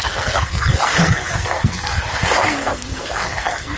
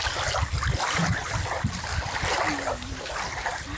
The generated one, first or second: first